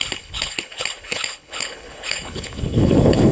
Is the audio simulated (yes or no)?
yes